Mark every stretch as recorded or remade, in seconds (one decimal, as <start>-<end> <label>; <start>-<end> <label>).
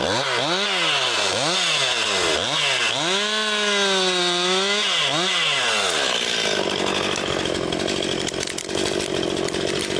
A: 0.0-10.0 recorded